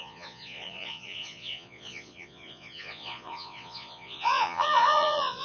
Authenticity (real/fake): fake